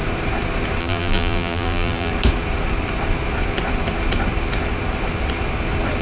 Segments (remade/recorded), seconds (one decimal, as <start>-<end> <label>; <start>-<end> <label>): 0.0-0.8 recorded; 0.8-2.1 remade; 2.1-6.0 recorded